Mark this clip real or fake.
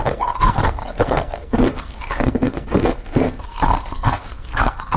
fake